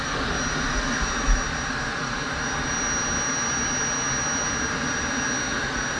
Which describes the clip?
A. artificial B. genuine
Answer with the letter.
B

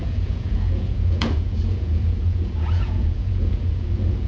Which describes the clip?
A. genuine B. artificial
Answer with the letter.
B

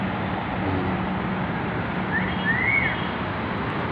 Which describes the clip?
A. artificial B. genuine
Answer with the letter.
B